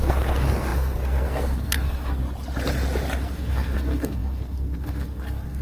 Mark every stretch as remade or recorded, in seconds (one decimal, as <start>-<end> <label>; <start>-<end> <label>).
0.0-2.2 remade; 2.2-3.2 recorded; 3.2-5.6 remade